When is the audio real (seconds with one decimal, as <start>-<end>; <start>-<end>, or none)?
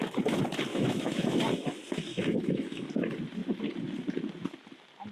0.0-0.7; 1.4-2.1; 2.9-5.1